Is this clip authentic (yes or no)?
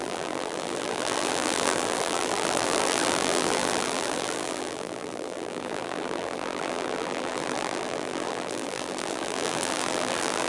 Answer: no